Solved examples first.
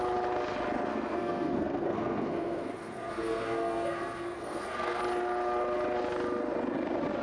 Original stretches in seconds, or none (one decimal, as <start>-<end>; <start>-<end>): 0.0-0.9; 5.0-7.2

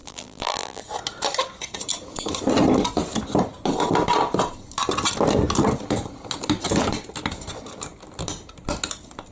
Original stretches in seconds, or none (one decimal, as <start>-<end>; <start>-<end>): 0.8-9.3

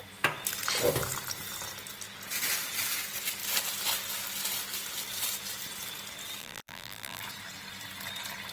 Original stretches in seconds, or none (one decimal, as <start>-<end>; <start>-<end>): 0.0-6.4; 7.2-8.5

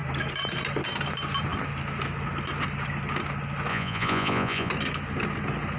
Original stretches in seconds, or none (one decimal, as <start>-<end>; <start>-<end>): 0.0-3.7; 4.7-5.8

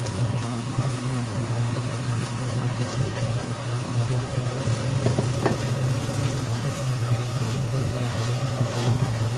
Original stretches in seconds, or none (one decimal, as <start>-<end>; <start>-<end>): 4.6-6.4